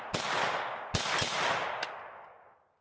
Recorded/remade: recorded